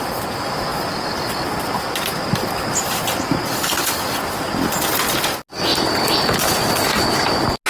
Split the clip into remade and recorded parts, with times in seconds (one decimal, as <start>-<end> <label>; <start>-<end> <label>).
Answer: 0.0-7.7 recorded